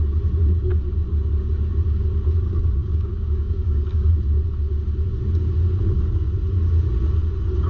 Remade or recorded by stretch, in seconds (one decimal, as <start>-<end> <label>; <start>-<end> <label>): 0.0-2.8 recorded; 2.8-4.1 remade; 4.1-7.7 recorded